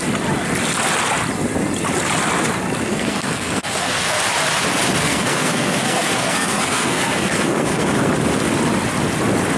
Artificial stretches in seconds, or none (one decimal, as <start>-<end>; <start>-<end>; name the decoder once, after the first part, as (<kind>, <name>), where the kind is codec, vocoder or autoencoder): 2.9-4.2 (codec, SNAC); 5.0-8.1